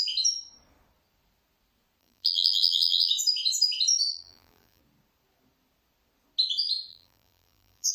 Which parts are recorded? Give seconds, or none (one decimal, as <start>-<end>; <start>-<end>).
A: 0.0-2.0; 3.1-4.1; 4.8-6.9